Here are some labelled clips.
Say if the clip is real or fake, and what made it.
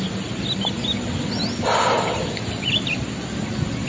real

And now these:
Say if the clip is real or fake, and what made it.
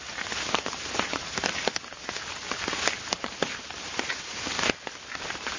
real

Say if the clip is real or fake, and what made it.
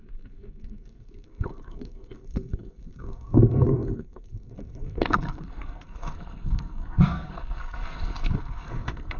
fake, codec, SNAC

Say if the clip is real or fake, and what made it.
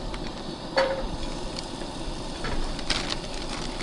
fake, vocoder, BigVGAN v2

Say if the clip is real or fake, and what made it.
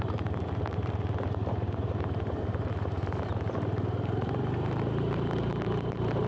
fake, vocoder, BigVGAN v2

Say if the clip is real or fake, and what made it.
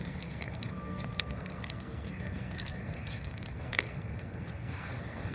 fake, codec, SNAC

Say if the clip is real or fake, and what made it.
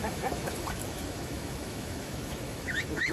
fake, autoencoder, DAC-VAE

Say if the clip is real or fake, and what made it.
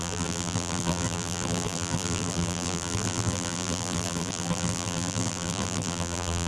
fake, vocoder, BigVGAN v2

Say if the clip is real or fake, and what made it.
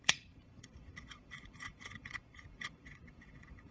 fake, vocoder, Vocos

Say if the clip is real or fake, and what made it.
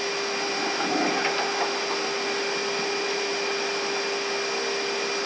real